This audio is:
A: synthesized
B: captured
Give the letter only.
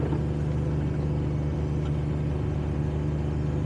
B